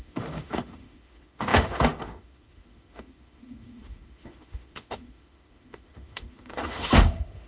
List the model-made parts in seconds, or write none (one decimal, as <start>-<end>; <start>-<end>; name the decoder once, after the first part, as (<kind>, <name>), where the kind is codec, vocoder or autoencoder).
0.0-7.5 (autoencoder, DAC-VAE)